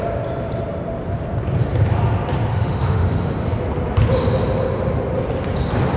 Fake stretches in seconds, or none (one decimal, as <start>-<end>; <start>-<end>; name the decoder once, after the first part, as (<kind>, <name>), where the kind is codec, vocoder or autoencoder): 2.5-3.3 (autoencoder, DAC-VAE)

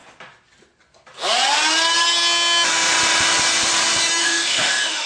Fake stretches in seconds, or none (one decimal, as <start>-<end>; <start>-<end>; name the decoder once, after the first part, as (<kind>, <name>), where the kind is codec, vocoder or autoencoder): 4.2-5.1 (autoencoder, DAC-VAE)